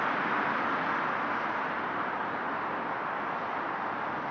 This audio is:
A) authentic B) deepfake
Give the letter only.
A